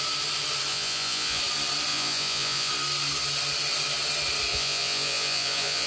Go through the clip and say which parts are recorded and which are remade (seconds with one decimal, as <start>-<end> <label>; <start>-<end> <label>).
0.0-0.7 recorded; 0.7-1.4 remade; 1.4-1.9 recorded; 1.9-2.7 remade; 2.7-4.5 recorded; 4.5-5.9 remade